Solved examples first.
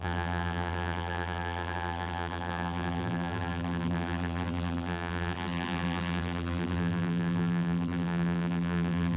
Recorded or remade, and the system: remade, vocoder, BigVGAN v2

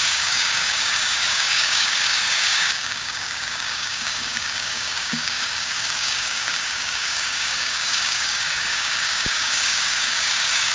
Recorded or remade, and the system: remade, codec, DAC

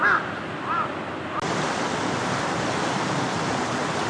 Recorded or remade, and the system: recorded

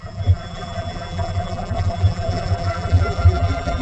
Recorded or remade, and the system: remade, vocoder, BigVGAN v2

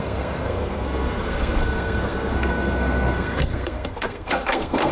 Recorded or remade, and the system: remade, codec, SNAC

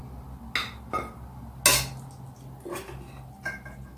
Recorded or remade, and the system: recorded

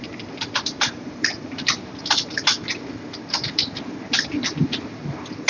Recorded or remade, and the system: recorded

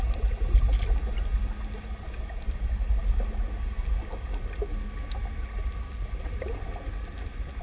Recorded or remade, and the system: recorded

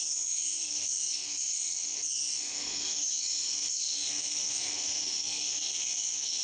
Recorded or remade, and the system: remade, codec, SNAC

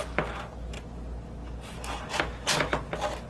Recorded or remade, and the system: recorded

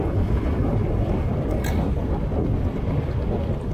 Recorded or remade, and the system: recorded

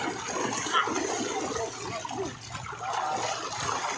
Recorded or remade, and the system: recorded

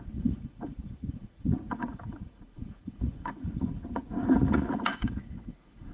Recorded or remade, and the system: remade, vocoder, Vocos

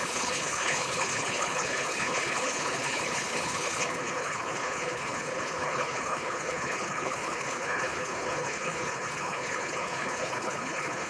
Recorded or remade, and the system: remade, codec, HILCodec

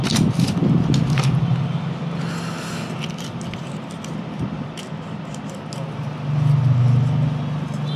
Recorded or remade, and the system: recorded